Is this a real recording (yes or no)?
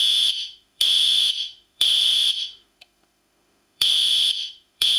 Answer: no